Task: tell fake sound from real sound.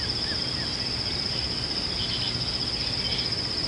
real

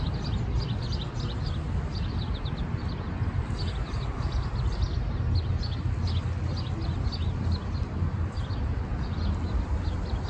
real